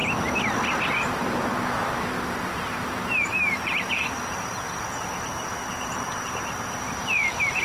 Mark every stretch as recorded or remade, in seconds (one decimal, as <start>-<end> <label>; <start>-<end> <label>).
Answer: 0.0-2.5 recorded; 2.5-7.1 remade; 7.1-7.6 recorded